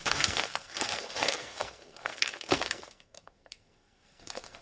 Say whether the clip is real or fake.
fake